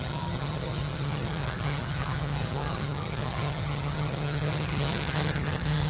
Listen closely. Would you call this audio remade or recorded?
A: remade